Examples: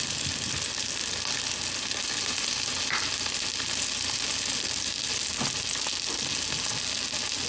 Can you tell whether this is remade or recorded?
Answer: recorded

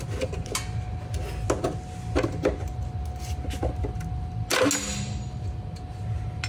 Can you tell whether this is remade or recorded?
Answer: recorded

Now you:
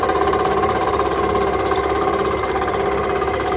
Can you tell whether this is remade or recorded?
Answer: remade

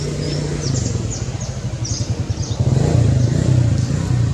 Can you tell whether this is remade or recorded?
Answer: recorded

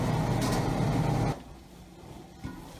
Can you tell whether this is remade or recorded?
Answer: recorded